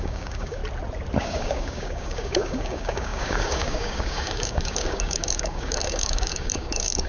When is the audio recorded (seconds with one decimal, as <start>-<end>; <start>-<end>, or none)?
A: 0.6-1.2